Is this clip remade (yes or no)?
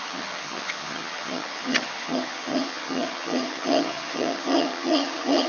yes